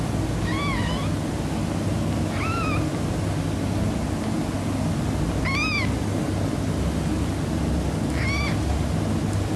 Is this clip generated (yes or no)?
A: no